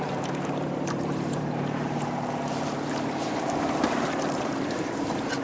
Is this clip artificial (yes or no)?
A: yes